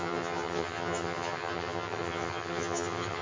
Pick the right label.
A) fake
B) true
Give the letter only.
A